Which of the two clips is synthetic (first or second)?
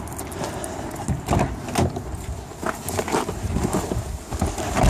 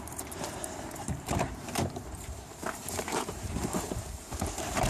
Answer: second